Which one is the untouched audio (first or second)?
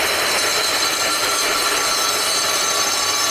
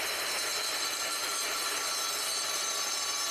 second